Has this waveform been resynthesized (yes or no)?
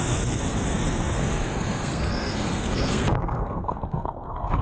yes